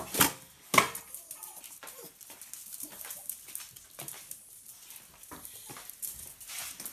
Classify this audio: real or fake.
real